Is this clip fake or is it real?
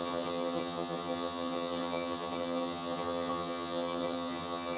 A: fake